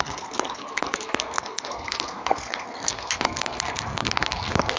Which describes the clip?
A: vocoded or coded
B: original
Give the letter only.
A